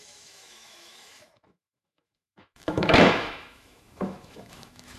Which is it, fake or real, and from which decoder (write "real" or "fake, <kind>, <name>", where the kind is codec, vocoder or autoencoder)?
fake, autoencoder, DAC-VAE